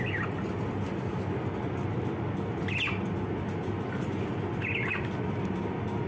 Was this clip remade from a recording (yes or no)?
no